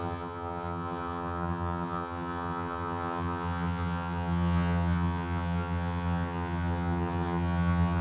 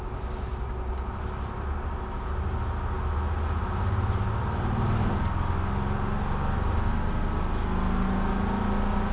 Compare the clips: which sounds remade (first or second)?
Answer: first